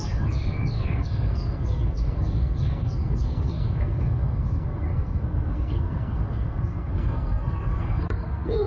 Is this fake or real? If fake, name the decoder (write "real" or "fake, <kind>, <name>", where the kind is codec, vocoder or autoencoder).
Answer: fake, codec, SNAC